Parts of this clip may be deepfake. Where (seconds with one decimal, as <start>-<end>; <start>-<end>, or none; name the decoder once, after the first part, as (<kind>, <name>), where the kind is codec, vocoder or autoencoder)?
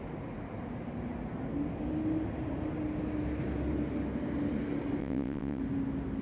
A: 5.0-5.6 (vocoder, WaveNeXt)